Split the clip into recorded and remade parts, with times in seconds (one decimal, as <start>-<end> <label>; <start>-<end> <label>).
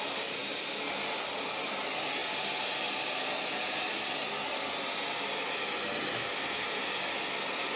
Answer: 0.0-7.8 recorded